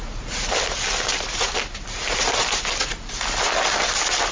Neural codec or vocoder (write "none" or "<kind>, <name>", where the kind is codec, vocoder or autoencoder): vocoder, BigVGAN v2